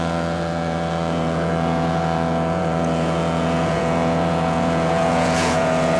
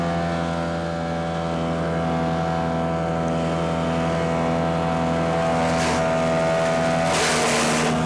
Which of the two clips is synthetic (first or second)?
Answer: first